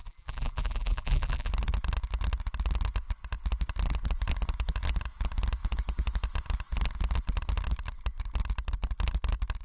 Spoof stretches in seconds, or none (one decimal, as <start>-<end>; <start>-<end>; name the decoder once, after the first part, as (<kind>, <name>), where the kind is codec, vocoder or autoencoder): 0.0-1.5 (vocoder, BigVGAN v2)